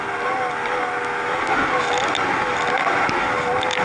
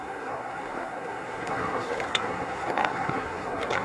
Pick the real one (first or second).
first